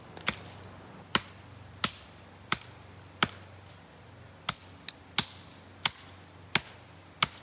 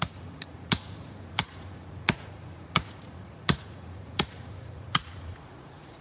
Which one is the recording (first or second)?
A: first